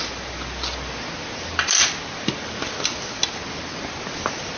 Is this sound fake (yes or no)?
no